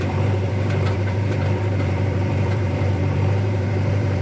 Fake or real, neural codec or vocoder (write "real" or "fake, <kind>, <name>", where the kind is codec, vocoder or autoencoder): fake, vocoder, BigVGAN v2